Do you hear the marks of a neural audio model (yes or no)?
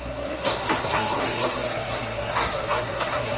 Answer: yes